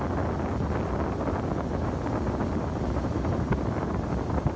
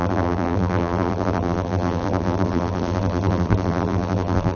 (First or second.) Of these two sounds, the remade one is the second